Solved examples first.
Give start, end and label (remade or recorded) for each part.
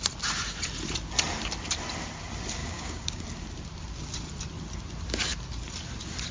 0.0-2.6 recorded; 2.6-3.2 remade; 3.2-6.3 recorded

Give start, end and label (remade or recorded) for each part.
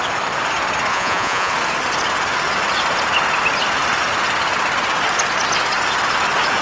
0.0-0.9 recorded; 0.9-1.5 remade; 1.5-6.6 recorded